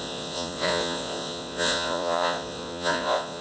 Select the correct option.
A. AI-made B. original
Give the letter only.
A